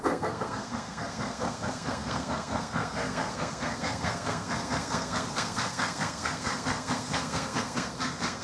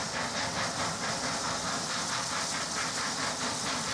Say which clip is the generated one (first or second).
first